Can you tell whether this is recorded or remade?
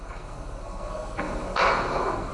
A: remade